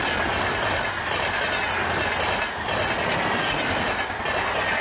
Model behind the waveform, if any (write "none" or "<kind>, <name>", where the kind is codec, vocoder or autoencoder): none